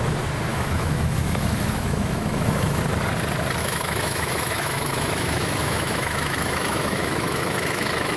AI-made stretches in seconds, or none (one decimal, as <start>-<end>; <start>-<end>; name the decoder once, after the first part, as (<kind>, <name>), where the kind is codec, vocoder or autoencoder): 0.5-2.8 (autoencoder, DAC-VAE); 3.6-8.2